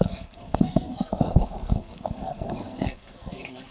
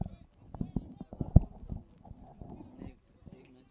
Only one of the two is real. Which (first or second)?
second